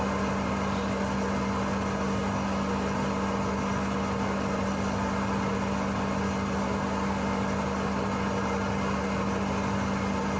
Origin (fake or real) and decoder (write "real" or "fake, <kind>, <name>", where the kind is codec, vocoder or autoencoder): real